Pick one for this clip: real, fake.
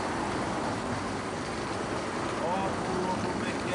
real